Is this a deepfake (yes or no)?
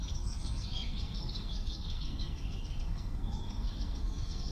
yes